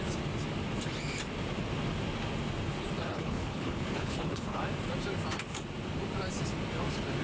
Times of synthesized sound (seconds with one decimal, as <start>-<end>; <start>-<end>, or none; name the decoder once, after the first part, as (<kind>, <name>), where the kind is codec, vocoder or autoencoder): 3.1-4.6 (codec, HILCodec)